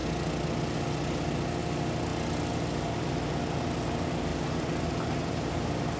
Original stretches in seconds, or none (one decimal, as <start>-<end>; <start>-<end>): 0.0-4.3